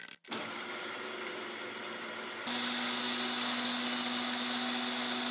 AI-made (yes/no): no